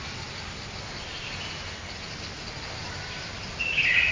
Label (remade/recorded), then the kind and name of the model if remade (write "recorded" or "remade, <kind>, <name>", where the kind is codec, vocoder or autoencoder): recorded